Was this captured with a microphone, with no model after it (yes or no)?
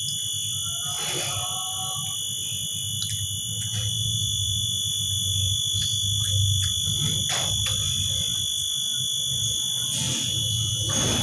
yes